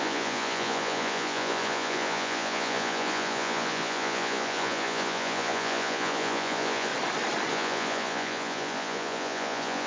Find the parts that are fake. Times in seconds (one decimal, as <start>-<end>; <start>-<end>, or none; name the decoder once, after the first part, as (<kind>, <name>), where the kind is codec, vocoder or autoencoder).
0.0-6.9 (vocoder, Vocos); 7.5-9.9